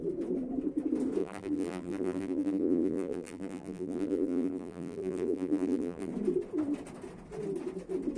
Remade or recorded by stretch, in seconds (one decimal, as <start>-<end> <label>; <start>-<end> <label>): 0.0-1.2 recorded; 1.2-6.1 remade; 6.1-8.2 recorded